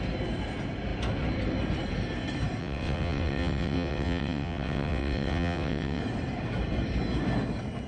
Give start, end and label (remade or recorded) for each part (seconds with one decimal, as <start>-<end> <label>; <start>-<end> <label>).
0.0-2.6 recorded; 2.6-6.0 remade; 6.0-7.9 recorded